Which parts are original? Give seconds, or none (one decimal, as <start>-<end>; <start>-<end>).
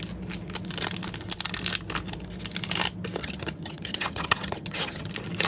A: 0.0-3.2; 5.1-5.5